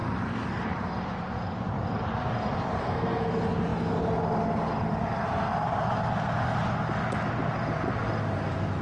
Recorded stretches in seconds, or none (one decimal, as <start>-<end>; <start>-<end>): 0.0-2.8; 3.3-8.8